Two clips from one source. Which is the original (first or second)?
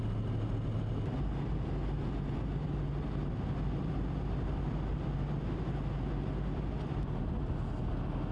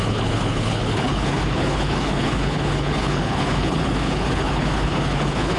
first